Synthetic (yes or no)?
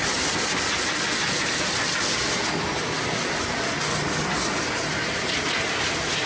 no